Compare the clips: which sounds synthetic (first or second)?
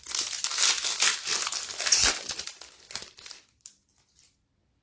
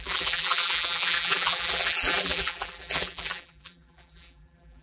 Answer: second